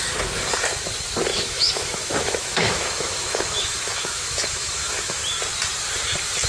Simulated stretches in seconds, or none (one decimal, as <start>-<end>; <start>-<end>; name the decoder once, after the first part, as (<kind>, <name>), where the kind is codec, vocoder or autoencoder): 1.3-5.2 (autoencoder, DAC-VAE)